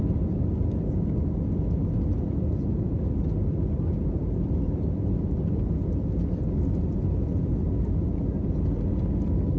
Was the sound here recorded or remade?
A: recorded